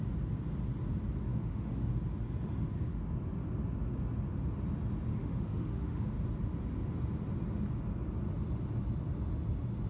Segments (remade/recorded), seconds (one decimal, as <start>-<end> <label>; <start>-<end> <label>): 0.0-1.3 recorded; 1.3-1.9 remade; 1.9-5.1 recorded; 5.1-6.1 remade; 6.1-9.9 recorded